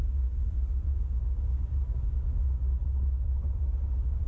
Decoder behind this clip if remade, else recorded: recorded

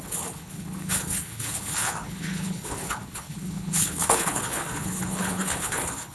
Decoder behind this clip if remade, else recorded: remade, codec, HILCodec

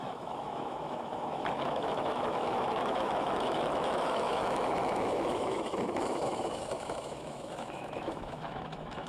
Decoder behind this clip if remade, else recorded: remade, autoencoder, DAC-VAE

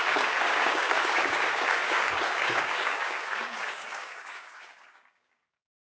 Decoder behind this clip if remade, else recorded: remade, codec, DAC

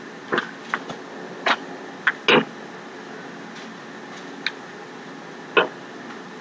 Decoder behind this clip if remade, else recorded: recorded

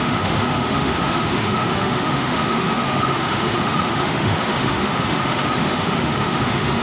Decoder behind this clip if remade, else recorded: remade, autoencoder, DAC-VAE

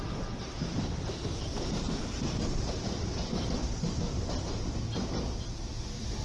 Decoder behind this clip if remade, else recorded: recorded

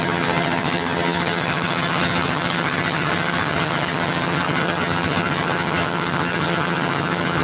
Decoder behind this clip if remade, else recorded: remade, vocoder, HiFi-GAN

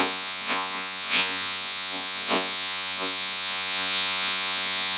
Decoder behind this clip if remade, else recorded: remade, vocoder, Vocos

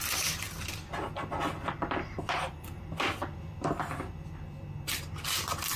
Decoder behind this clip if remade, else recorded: recorded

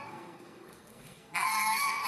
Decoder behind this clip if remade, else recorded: remade, codec, SNAC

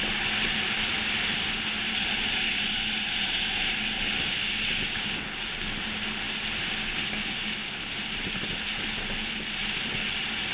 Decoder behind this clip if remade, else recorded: recorded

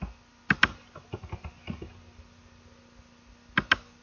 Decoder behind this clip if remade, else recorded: recorded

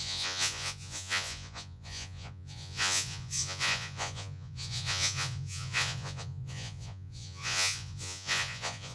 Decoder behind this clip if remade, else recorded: remade, vocoder, Vocos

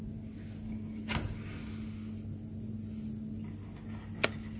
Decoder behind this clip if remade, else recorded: recorded